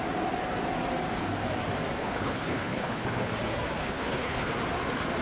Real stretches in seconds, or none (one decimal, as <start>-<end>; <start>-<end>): 0.0-2.0; 3.3-3.8; 4.5-5.2

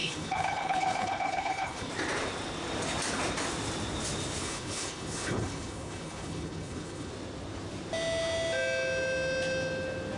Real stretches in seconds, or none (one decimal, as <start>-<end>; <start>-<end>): 1.9-4.4; 7.1-10.2

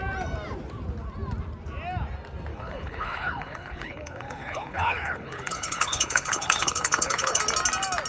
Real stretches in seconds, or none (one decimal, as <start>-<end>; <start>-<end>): 0.0-2.5; 7.4-8.1